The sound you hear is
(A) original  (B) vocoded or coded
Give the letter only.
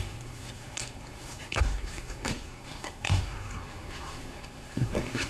B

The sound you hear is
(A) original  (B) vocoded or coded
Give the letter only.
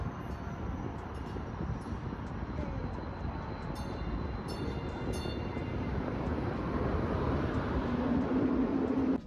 A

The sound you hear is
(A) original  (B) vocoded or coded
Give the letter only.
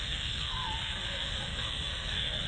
B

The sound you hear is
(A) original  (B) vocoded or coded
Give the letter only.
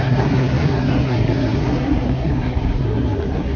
B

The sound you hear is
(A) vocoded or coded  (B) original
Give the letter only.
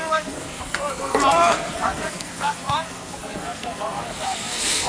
A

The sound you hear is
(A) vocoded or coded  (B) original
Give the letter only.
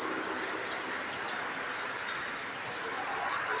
B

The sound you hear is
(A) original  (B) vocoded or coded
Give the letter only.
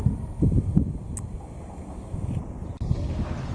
A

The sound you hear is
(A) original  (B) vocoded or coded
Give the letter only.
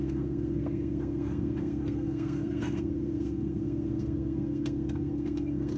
B